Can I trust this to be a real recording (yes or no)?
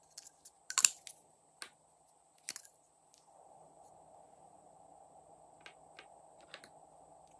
yes